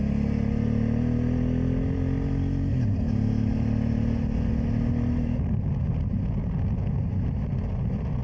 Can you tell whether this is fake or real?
real